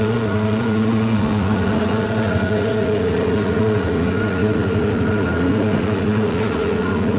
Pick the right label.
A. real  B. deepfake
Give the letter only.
B